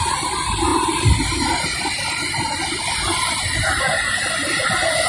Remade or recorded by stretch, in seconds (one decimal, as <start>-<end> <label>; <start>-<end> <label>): 0.0-0.7 recorded; 0.7-3.8 remade; 3.8-5.1 recorded